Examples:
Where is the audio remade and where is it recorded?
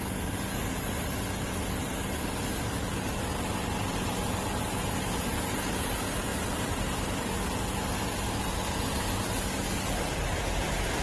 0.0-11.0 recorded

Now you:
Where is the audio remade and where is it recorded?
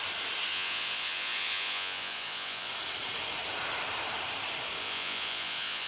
0.0-0.5 recorded; 0.5-2.7 remade; 2.7-4.8 recorded; 4.8-5.9 remade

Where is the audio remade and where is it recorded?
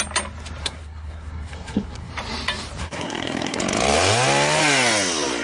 0.0-0.6 recorded; 0.6-2.1 remade; 2.1-2.8 recorded; 2.8-3.6 remade; 3.6-5.4 recorded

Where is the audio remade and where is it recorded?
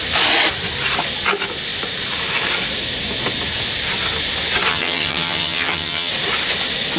0.0-4.7 recorded; 4.7-6.1 remade; 6.1-7.0 recorded